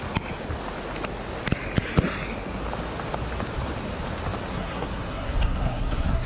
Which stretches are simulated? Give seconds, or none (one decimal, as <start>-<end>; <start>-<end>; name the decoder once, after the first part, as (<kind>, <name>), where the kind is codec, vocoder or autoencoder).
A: 4.5-6.3 (codec, SNAC)